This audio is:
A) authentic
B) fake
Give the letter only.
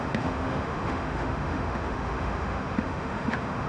B